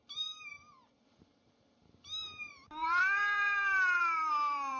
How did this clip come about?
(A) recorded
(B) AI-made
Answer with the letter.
B